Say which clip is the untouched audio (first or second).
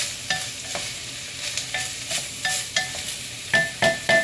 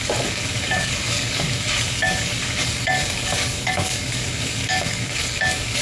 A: first